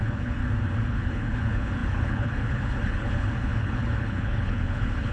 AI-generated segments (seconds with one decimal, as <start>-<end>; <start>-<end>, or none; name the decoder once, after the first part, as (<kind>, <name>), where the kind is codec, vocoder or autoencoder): 0.0-0.4 (codec, HILCodec); 0.9-5.1

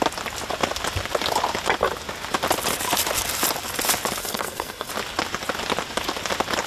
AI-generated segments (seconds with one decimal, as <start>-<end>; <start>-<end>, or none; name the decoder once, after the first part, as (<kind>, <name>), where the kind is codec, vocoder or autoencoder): 4.2-4.9 (codec, SNAC)

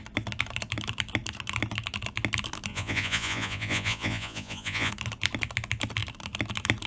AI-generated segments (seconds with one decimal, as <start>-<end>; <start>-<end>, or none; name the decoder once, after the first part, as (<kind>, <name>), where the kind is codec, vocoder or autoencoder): 2.7-4.9 (vocoder, Vocos)

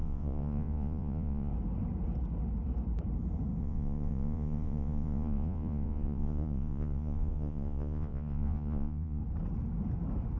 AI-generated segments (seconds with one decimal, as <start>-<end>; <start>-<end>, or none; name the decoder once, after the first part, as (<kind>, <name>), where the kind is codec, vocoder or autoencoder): 0.0-1.5 (vocoder, Vocos); 3.6-9.2

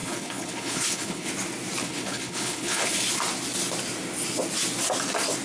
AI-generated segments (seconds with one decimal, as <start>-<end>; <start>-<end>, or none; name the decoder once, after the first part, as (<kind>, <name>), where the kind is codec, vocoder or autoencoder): 0.0-1.3 (codec, HILCodec); 1.8-3.0

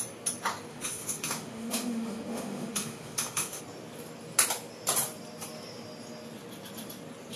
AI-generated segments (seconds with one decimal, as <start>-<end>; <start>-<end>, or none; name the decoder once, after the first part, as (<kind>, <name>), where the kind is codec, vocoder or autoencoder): 0.7-3.6 (autoencoder, DAC-VAE)